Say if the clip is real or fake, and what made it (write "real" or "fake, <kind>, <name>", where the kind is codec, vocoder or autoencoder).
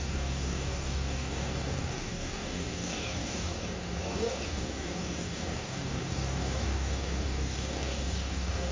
fake, codec, DAC